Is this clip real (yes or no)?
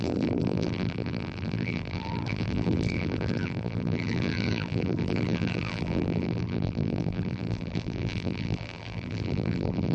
no